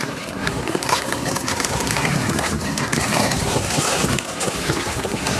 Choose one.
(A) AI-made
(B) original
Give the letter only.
A